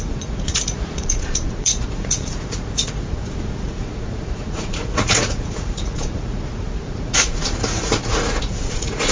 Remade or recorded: remade